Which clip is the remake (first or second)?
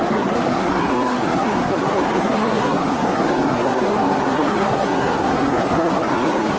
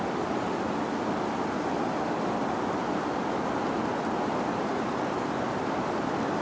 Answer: first